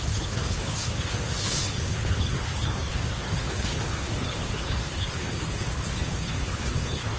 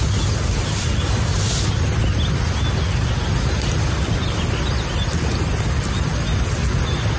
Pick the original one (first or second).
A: second